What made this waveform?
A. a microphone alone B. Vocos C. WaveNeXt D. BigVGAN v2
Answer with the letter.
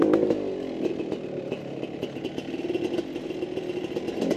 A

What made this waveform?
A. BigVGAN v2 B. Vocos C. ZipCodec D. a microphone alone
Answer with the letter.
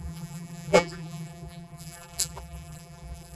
A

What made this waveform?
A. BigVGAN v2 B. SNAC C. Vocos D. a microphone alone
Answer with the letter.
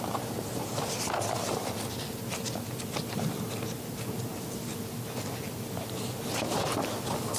D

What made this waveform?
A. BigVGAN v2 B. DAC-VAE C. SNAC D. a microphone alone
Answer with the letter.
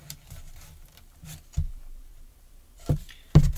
A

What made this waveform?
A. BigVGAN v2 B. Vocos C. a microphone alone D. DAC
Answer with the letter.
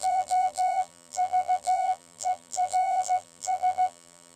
A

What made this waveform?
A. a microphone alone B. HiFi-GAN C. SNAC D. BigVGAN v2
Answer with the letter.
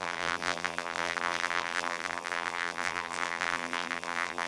D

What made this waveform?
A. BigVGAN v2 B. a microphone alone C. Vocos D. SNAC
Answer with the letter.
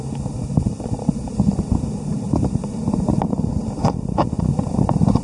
A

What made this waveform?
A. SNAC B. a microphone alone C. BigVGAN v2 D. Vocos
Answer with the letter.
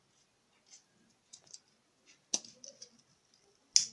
B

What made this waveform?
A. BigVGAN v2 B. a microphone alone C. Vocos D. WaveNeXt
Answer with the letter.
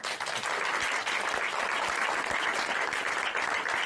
B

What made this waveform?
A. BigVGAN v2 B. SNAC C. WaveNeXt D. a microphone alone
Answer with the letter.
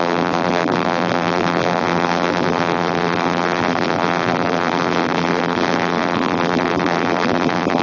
A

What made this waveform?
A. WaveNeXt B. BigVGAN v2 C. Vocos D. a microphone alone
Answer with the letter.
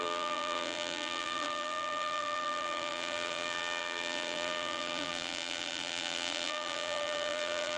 B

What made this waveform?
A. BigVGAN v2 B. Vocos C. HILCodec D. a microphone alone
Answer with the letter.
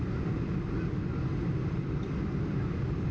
D